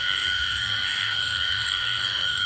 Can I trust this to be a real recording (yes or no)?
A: no